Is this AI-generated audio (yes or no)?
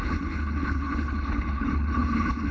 yes